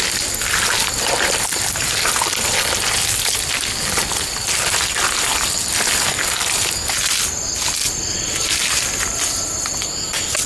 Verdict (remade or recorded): recorded